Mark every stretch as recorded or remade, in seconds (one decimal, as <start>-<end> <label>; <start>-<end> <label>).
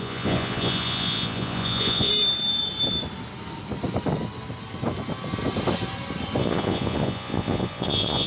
0.0-2.1 remade; 2.1-6.4 recorded; 6.4-8.3 remade